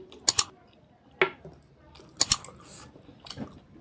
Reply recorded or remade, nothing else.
recorded